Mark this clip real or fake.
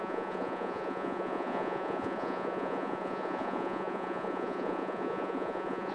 fake